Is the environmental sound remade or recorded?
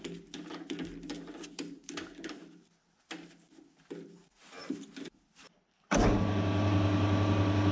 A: recorded